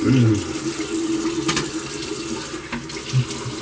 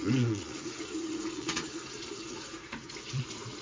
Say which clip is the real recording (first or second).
first